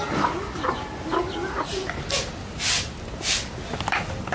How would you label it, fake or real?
real